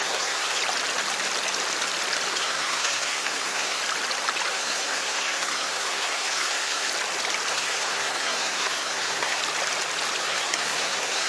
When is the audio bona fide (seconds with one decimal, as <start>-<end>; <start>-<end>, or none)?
0.6-2.3; 3.8-4.5; 6.9-7.5; 9.4-10.2